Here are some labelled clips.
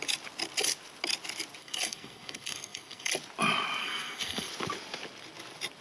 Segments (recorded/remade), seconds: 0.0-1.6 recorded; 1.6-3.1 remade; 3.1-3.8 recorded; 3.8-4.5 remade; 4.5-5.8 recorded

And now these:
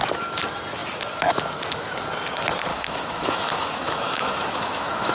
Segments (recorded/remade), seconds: 0.0-2.7 recorded; 2.7-5.1 remade

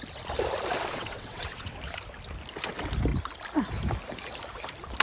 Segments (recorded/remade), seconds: 0.0-0.9 recorded; 0.9-1.7 remade; 1.7-5.0 recorded